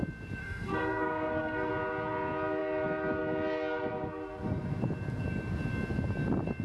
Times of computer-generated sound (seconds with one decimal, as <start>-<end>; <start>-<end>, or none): 0.4-1.7